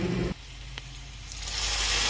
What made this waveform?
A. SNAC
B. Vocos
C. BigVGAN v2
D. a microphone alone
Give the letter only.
D